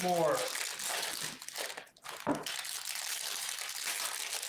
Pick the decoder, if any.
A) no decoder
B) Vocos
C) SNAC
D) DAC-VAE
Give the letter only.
A